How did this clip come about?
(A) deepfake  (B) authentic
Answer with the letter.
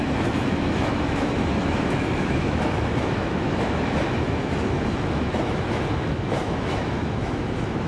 A